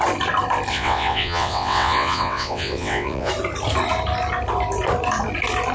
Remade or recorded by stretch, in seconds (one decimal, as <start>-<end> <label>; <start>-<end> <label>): 0.0-0.7 recorded; 0.7-3.3 remade; 3.3-5.7 recorded

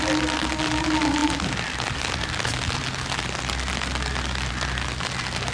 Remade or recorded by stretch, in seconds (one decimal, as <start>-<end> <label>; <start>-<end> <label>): 0.0-5.5 recorded

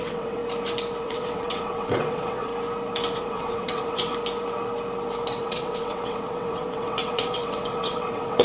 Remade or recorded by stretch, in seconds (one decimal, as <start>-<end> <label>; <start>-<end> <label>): 0.0-0.4 remade; 0.4-1.0 recorded; 1.0-2.5 remade; 2.5-3.2 recorded; 3.2-4.1 remade; 4.1-5.4 recorded; 5.4-8.4 remade